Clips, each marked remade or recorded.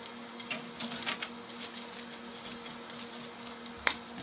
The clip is recorded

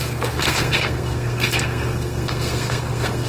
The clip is remade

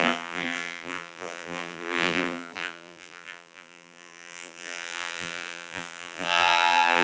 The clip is remade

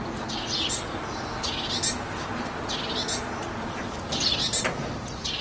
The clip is recorded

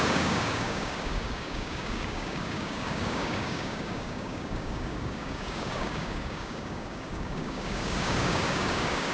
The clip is remade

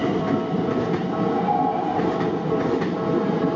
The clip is recorded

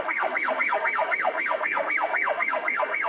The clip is remade